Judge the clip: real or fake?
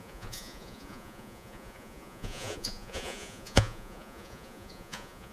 fake